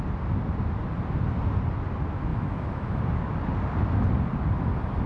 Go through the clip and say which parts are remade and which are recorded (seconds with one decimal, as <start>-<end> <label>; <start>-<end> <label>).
0.0-2.3 recorded; 2.3-3.0 remade; 3.0-5.1 recorded